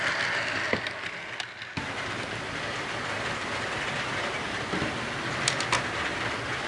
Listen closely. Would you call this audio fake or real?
real